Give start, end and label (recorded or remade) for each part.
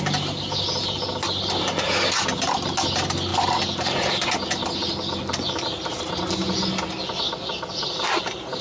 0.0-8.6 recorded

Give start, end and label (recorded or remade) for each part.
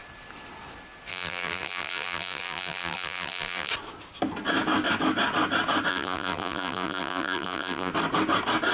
0.0-1.1 recorded; 1.1-3.7 remade; 3.7-5.9 recorded; 5.9-7.9 remade; 7.9-8.7 recorded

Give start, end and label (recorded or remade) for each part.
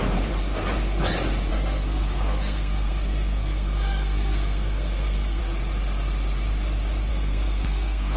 0.0-1.5 recorded; 1.5-5.4 remade; 5.4-7.1 recorded; 7.1-8.2 remade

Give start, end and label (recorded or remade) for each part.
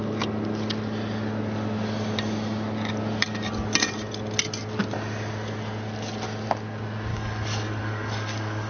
0.0-7.1 recorded; 7.1-8.7 remade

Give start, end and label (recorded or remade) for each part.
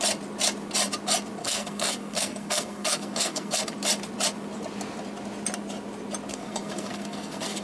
0.0-1.4 recorded; 1.4-3.6 remade; 3.6-6.3 recorded; 6.3-7.6 remade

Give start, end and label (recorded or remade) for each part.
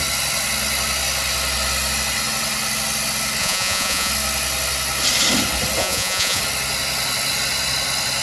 0.0-3.4 recorded; 3.4-4.1 remade; 4.1-5.8 recorded; 5.8-6.4 remade; 6.4-8.2 recorded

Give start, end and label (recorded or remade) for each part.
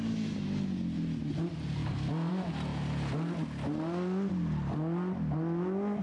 0.0-1.8 recorded; 1.8-2.3 remade; 2.3-6.0 recorded